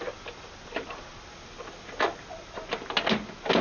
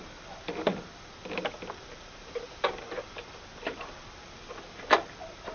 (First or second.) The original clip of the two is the first